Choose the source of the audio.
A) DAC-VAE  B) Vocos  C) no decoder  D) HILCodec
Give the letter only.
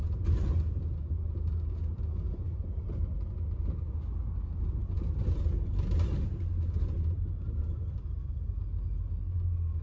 C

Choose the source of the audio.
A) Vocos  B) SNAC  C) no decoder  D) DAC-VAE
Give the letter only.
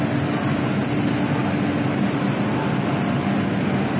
C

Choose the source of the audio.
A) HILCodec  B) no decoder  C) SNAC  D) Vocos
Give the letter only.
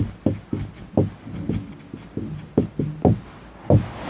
B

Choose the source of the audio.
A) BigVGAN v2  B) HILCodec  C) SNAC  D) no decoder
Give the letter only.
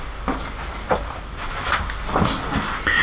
D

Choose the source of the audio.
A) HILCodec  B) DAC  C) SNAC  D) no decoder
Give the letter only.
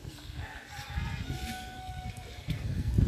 C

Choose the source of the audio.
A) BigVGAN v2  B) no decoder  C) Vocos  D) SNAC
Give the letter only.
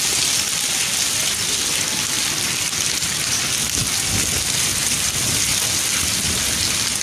B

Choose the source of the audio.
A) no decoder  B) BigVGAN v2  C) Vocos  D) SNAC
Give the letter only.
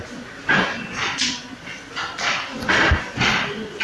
A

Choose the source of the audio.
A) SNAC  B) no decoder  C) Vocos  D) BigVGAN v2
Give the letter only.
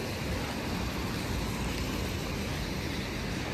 B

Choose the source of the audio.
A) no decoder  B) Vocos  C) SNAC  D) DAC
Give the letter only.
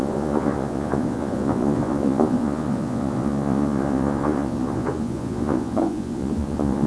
B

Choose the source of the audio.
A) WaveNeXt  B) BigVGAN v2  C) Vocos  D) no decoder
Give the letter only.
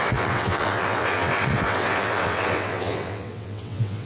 A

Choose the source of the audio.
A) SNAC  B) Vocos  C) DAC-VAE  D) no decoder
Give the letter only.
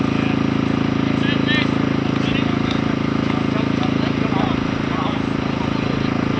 D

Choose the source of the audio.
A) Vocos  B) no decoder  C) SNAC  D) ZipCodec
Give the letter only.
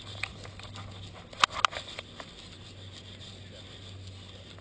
B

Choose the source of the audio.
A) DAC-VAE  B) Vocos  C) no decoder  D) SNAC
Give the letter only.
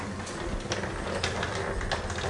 C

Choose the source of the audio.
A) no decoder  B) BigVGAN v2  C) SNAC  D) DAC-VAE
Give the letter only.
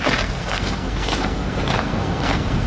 C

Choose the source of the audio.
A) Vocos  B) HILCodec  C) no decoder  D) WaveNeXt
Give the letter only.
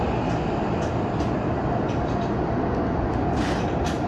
C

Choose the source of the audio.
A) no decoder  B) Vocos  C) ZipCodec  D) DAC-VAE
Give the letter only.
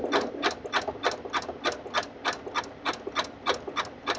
A